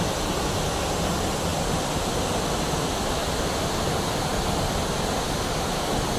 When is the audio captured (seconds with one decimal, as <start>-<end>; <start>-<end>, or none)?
0.0-4.3; 5.5-6.2